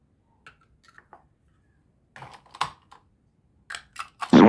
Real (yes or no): yes